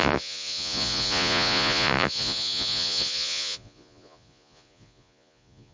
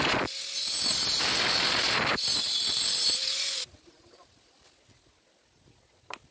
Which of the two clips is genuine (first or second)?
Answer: second